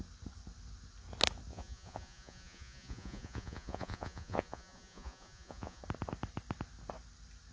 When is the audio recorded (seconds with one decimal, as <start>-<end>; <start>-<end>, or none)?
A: 0.0-1.5; 5.8-7.5